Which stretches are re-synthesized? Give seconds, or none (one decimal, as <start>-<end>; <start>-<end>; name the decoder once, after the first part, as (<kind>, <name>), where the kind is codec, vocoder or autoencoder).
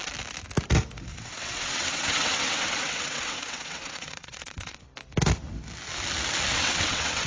1.1-4.8 (vocoder, WaveNeXt); 6.5-7.3